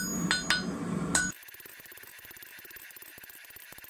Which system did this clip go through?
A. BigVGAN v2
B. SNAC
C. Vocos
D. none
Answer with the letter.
D